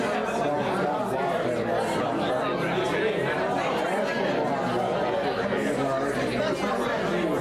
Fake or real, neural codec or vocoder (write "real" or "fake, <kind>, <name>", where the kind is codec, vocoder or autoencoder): real